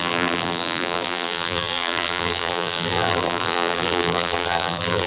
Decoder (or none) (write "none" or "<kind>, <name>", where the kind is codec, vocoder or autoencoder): vocoder, BigVGAN v2